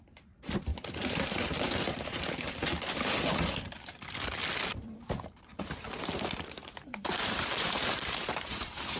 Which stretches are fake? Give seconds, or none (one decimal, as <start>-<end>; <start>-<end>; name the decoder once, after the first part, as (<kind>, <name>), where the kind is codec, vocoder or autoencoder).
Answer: 0.7-3.2 (vocoder, BigVGAN v2); 4.7-9.0

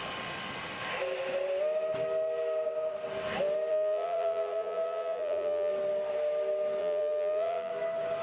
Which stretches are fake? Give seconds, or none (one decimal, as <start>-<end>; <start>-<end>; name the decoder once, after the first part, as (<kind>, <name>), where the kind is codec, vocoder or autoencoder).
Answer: 3.7-5.7 (vocoder, BigVGAN v2); 6.8-7.7

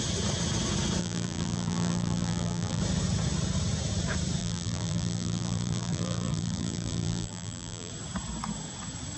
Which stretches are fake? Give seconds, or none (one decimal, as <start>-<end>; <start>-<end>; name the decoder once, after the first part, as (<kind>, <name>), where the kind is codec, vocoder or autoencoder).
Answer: 1.0-2.8 (vocoder, BigVGAN v2); 4.4-7.9